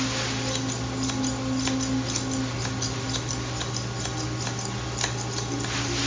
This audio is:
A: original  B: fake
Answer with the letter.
A